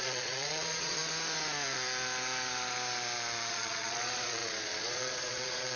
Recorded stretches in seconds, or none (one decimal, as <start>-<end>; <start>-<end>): 1.0-3.5

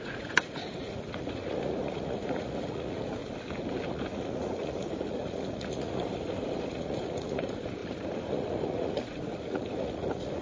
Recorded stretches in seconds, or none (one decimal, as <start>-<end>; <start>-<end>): 3.2-3.9

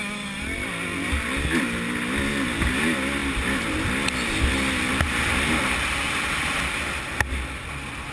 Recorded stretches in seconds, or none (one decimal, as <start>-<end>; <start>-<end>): 0.0-8.1

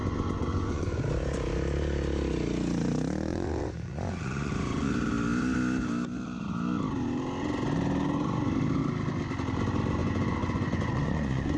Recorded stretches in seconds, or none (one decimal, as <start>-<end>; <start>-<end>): 1.0-3.3; 4.9-10.0

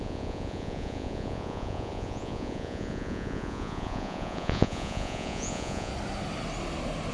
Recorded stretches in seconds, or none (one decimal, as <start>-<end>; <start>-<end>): 5.9-7.1

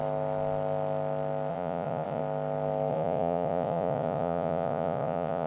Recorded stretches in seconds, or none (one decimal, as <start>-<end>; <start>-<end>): 0.0-1.5; 2.2-2.9

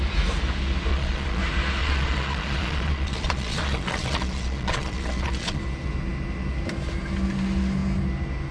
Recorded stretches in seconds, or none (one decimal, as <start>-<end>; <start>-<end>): 0.0-0.9; 1.4-1.8; 5.6-8.5

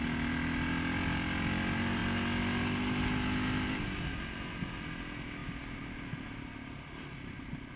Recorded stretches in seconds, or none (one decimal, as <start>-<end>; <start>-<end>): 0.0-7.8